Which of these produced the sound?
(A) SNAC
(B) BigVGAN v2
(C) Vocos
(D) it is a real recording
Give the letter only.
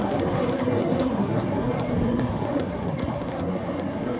A